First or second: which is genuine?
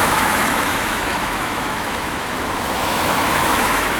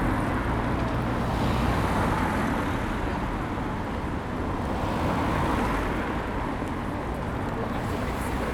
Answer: second